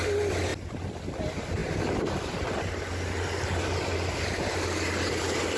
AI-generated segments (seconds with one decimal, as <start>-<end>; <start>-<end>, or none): none